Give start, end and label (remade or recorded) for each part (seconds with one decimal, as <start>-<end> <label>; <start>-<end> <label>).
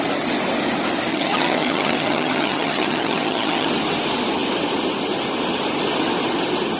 0.0-1.1 recorded; 1.1-3.7 remade; 3.7-6.8 recorded